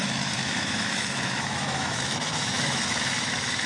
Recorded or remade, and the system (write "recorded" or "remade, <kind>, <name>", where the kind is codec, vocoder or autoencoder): remade, autoencoder, DAC-VAE